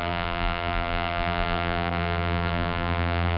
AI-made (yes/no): yes